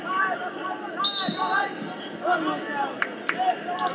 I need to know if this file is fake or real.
real